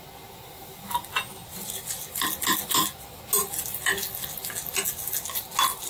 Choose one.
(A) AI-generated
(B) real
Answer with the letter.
B